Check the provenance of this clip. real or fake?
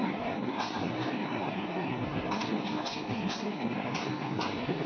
fake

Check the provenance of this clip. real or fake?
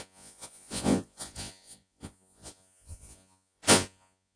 fake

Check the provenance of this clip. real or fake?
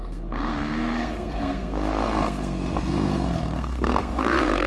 fake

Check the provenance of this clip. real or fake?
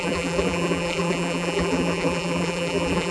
fake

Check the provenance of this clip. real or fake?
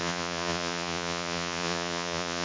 fake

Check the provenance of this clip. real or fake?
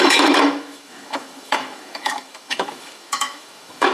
fake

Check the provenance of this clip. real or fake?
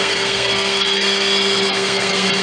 fake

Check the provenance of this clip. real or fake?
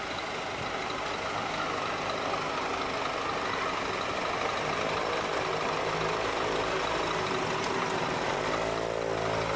real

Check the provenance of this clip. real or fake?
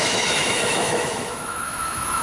fake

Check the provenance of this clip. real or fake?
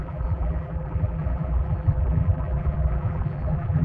fake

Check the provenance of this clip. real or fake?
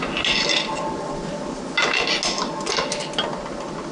real